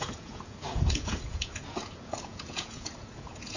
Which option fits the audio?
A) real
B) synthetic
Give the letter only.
B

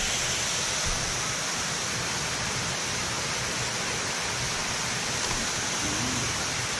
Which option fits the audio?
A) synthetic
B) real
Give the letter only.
B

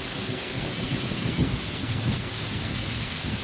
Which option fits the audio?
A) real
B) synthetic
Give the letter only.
B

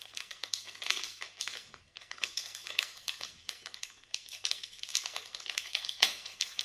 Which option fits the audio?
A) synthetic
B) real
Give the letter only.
A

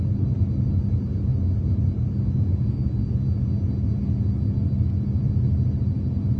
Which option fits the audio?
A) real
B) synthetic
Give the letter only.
A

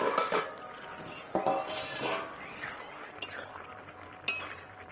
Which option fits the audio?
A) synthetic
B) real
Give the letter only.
B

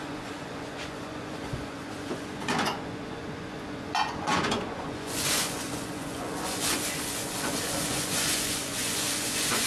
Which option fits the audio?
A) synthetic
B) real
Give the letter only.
A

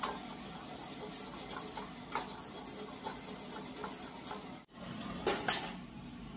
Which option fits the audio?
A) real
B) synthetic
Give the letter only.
A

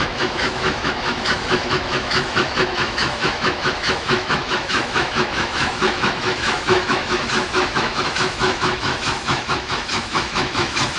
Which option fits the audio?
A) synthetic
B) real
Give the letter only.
A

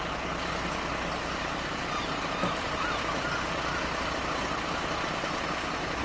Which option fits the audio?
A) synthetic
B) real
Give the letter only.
B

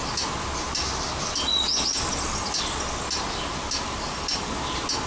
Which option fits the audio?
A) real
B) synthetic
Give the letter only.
A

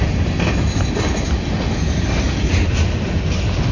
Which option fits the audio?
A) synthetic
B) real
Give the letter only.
B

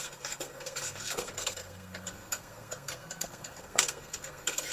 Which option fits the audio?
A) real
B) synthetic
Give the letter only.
B